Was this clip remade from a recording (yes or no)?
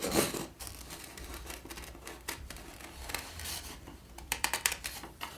yes